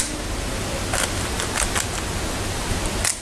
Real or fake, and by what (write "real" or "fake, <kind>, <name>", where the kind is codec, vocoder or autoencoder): real